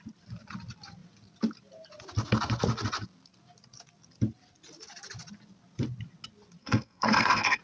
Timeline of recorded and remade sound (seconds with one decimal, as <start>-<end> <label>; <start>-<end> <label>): 0.0-6.6 recorded; 6.6-7.6 remade